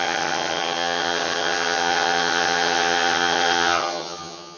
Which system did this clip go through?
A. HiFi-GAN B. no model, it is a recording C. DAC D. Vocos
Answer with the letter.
A